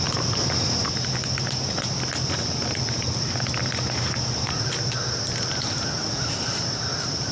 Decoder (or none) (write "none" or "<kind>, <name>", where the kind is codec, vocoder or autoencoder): none